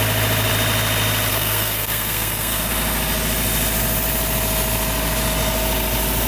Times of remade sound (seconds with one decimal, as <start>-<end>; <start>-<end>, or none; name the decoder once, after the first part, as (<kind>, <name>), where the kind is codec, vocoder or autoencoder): 1.3-2.7 (codec, SNAC)

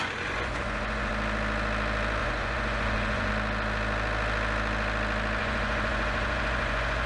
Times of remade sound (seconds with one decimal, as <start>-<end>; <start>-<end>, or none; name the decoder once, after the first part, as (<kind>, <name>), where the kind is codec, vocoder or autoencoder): 0.0-1.1 (vocoder, Vocos); 2.2-3.3; 5.4-7.1

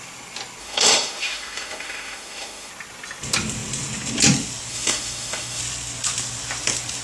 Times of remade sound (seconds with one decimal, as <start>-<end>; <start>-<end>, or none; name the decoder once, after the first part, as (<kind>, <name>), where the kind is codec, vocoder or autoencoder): 0.6-2.7 (autoencoder, DAC-VAE); 4.7-5.6

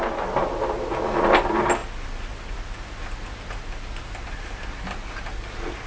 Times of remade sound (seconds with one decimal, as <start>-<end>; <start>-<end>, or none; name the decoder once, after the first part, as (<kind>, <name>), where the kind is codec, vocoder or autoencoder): none

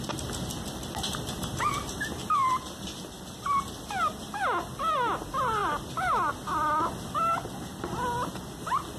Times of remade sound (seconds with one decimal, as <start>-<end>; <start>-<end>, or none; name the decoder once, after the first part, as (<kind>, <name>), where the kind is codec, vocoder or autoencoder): none

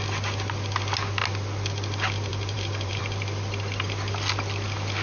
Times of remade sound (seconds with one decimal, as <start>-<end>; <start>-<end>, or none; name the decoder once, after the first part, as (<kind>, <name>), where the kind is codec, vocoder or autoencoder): 2.3-3.0 (vocoder, BigVGAN v2)

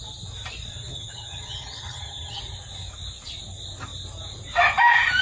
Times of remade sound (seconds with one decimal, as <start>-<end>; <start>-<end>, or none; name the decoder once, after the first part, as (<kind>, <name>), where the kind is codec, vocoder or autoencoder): 0.7-2.4 (vocoder, HiFi-GAN)